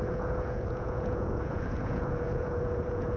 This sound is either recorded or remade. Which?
remade